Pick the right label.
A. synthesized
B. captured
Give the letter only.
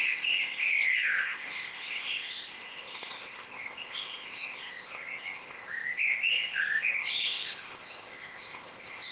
A